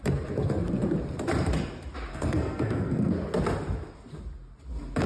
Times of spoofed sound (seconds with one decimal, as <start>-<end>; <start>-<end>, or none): 2.1-3.1